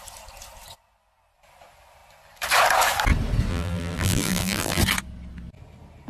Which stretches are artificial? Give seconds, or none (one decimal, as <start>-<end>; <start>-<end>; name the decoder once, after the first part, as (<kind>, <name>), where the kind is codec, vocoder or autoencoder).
3.5-4.8 (vocoder, BigVGAN v2)